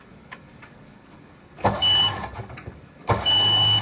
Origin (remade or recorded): remade